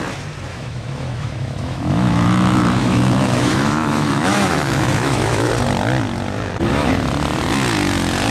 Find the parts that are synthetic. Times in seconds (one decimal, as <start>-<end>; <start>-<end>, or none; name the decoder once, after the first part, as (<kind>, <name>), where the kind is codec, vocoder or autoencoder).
0.5-5.5 (autoencoder, DAC-VAE)